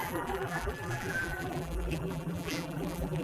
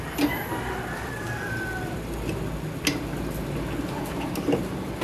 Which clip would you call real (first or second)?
second